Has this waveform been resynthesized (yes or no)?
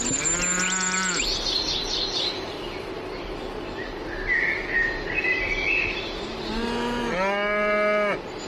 no